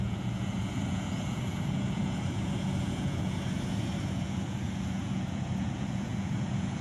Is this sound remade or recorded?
remade